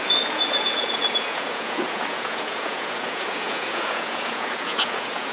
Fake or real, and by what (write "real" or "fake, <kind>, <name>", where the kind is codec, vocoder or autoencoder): fake, vocoder, Vocos